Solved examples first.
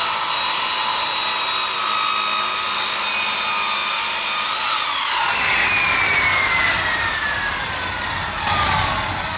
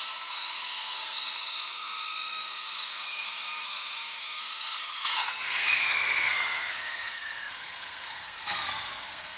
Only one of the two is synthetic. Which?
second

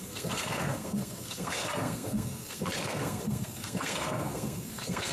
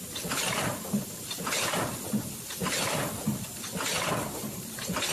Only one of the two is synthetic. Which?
first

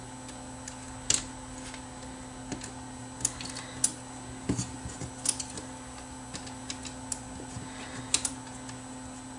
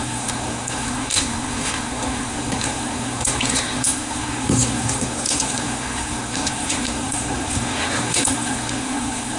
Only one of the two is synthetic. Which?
second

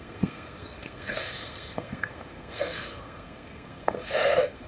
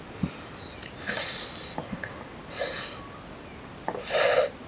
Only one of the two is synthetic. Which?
first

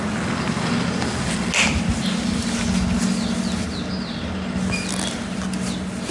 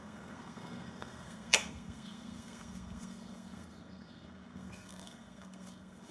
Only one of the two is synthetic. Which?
second